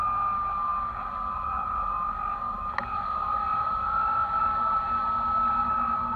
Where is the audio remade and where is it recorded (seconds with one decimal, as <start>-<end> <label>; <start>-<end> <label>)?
0.0-6.2 recorded